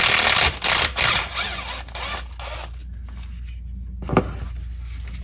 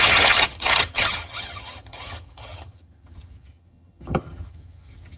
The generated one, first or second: second